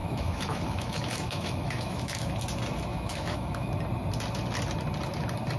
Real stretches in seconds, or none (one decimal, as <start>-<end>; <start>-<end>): 2.3-2.9; 3.7-5.6